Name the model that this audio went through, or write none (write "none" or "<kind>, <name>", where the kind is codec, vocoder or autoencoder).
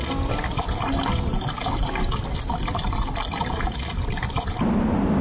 vocoder, BigVGAN v2